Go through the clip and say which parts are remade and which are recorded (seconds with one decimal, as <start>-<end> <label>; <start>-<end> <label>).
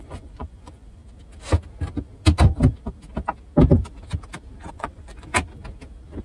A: 0.0-1.0 remade; 1.0-4.7 recorded; 4.7-5.3 remade; 5.3-6.2 recorded